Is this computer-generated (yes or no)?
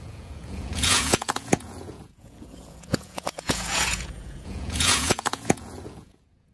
yes